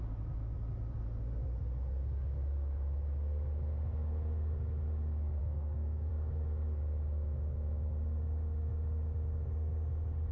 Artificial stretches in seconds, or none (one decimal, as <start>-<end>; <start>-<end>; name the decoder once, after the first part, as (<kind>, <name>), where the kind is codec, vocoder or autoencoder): 5.4-6.1 (codec, SNAC)